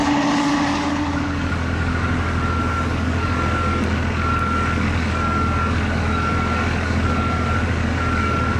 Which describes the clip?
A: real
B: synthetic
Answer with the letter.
B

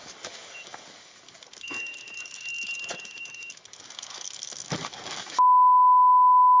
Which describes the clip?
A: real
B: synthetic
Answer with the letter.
B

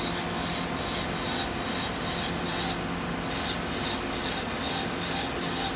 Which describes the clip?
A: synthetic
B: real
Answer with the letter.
B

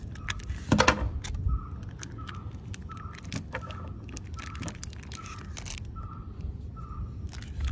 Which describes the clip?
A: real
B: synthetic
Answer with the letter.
A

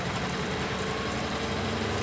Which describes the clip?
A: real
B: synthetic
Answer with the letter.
A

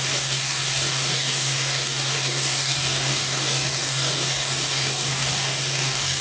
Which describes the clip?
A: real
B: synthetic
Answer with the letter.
B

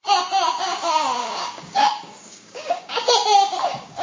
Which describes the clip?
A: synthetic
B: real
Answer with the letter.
A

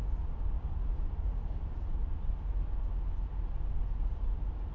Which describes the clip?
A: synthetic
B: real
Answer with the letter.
B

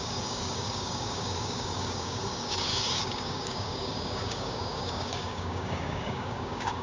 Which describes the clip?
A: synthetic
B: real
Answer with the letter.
A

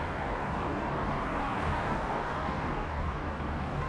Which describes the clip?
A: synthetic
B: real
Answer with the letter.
A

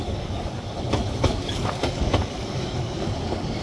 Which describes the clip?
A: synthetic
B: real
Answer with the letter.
A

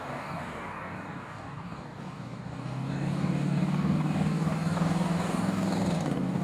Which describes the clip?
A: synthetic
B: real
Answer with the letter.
A